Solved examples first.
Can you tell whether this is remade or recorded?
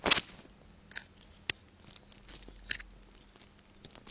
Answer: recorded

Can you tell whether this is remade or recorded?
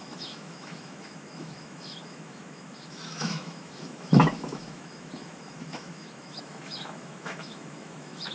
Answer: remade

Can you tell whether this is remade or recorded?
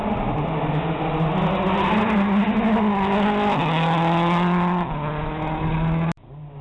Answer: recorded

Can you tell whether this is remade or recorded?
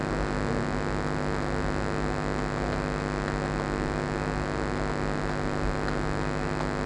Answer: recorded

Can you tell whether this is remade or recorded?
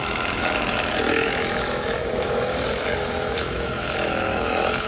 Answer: remade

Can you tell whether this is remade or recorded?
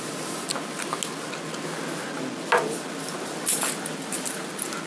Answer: recorded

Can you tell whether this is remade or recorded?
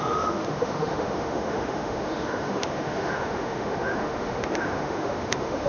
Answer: remade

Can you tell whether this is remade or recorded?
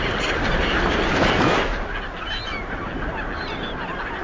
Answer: recorded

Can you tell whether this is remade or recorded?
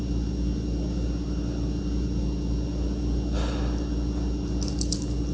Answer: recorded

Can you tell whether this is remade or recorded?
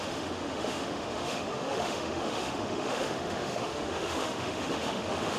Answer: remade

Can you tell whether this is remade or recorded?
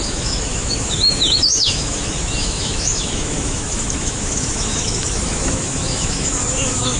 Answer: remade